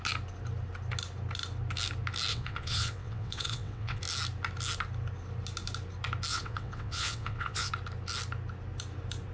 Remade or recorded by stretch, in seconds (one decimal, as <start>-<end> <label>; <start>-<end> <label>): 0.0-2.3 recorded; 2.3-4.0 remade; 4.0-6.3 recorded; 6.3-7.7 remade; 7.7-9.3 recorded